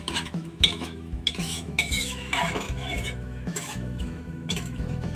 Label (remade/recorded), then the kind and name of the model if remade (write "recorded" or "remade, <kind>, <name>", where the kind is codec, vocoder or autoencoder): remade, autoencoder, DAC-VAE